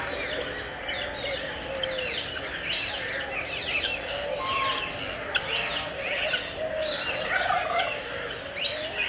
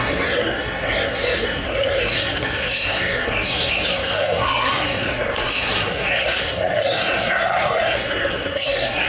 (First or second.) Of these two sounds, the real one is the first